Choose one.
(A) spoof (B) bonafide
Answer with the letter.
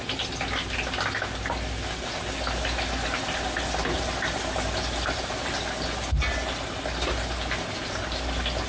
B